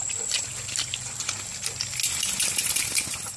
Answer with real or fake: real